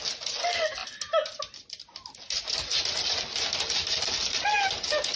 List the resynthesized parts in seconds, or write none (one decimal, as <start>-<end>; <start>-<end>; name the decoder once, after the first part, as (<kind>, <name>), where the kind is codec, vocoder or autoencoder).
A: none